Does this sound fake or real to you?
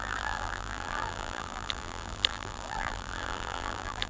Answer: fake